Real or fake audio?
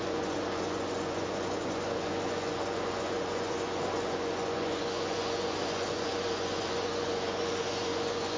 fake